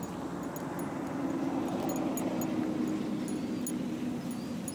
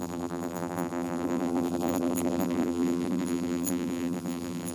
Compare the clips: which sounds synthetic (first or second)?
second